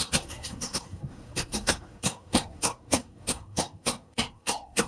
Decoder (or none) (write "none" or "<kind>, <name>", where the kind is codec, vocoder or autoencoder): codec, SNAC